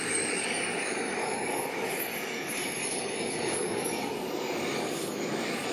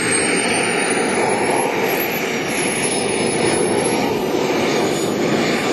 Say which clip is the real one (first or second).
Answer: second